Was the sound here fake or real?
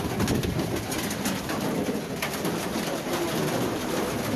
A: real